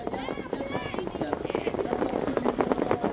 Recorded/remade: recorded